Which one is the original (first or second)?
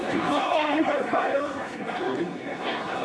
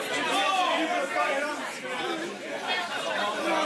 second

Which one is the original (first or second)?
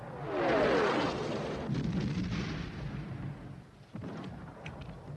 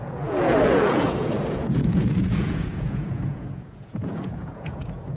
first